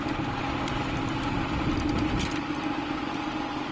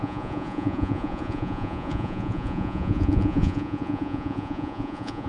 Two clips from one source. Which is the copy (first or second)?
second